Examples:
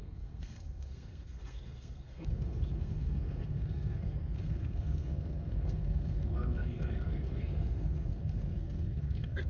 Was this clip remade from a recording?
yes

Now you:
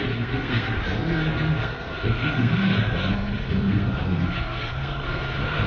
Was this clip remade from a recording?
yes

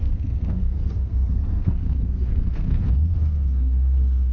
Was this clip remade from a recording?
yes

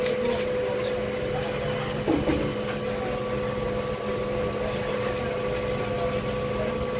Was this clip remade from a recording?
no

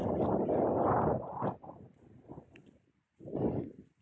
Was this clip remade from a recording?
no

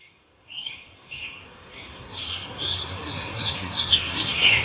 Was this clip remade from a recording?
yes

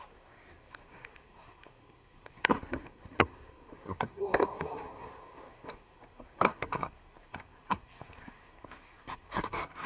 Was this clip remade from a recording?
yes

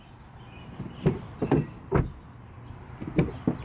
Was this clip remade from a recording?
no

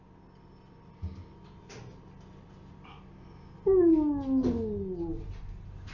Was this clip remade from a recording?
no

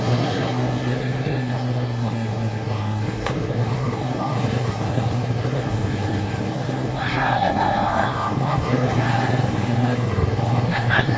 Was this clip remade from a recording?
yes